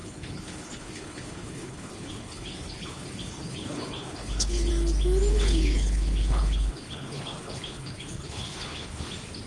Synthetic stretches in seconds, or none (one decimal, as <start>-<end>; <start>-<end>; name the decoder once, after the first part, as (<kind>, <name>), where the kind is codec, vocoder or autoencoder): 0.0-4.7 (codec, HILCodec); 5.3-9.1